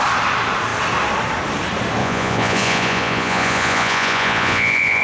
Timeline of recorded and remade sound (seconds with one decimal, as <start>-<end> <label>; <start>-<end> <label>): 0.0-2.0 recorded; 2.0-5.0 remade